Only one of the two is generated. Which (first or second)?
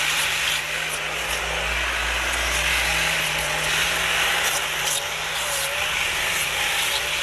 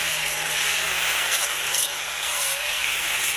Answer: second